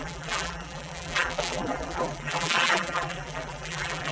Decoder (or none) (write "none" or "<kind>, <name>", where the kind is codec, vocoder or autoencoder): vocoder, BigVGAN v2